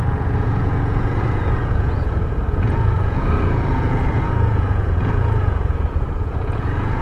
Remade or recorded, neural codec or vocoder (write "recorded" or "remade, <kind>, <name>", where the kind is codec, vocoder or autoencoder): remade, vocoder, Vocos